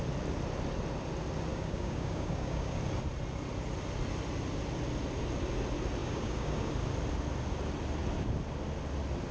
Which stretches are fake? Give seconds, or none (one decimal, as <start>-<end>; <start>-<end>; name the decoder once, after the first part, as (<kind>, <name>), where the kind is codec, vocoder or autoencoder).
1.5-2.8 (codec, DAC); 6.0-6.7

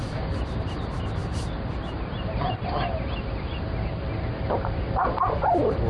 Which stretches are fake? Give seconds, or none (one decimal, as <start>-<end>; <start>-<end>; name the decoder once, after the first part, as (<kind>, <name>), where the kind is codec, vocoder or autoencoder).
none

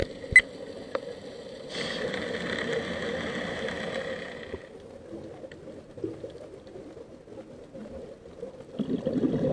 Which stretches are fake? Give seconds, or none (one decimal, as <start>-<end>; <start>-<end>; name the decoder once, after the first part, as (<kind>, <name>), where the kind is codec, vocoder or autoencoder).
none

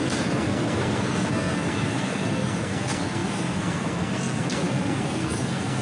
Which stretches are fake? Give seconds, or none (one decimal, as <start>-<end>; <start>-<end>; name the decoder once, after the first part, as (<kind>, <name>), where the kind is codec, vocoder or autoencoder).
0.0-5.8 (codec, SNAC)

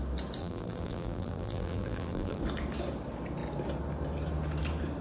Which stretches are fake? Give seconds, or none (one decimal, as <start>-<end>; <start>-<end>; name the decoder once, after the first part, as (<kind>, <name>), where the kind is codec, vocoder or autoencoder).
0.4-2.4 (vocoder, BigVGAN v2)

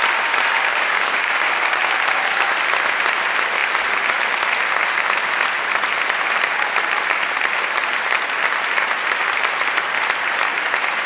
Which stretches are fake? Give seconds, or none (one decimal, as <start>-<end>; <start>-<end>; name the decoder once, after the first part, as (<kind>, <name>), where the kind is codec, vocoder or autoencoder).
0.5-1.8 (codec, DAC)

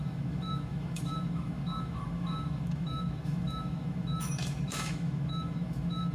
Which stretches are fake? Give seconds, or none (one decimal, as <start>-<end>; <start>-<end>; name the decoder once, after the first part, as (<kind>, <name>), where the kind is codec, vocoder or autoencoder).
0.0-6.1 (autoencoder, DAC-VAE)